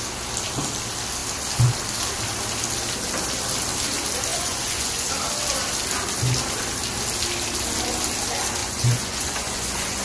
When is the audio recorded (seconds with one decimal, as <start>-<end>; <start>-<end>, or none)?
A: 0.0-4.3; 5.1-8.6